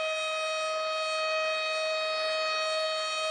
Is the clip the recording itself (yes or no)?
yes